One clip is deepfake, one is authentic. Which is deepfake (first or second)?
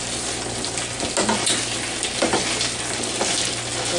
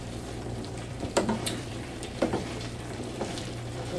second